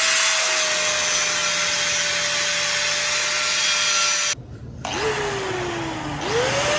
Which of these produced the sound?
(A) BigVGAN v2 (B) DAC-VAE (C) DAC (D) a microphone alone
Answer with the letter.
D